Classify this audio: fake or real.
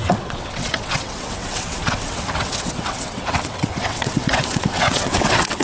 fake